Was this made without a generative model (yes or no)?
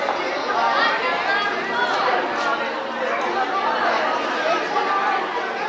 yes